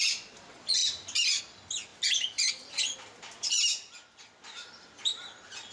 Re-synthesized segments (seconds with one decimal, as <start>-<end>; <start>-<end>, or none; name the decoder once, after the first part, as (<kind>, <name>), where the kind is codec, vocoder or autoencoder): none